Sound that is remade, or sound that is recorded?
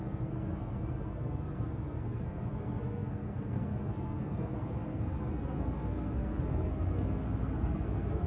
remade